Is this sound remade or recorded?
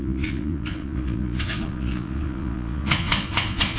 remade